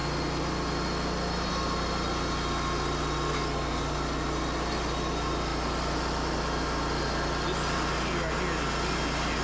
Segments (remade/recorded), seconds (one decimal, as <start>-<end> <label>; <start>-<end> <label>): 0.0-9.4 recorded